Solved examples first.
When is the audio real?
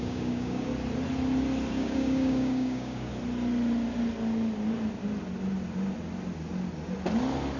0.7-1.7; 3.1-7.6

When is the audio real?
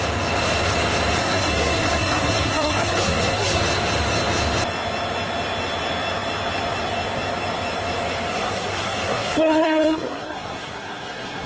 0.0-1.2; 3.6-8.3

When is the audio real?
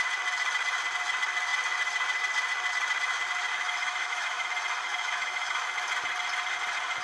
0.0-3.5; 4.5-4.9; 5.7-7.0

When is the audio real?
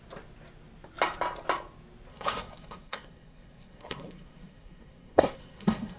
0.0-2.1